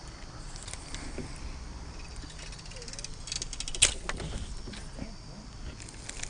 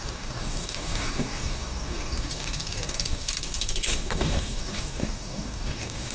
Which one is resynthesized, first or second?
second